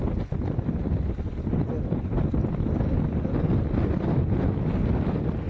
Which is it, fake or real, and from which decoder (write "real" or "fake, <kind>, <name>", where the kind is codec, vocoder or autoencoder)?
real